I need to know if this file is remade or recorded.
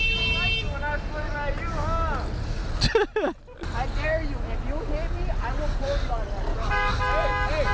recorded